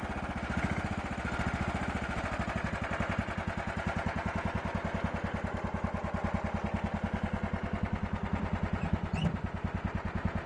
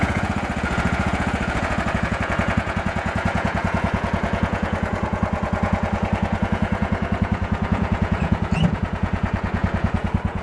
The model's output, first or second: second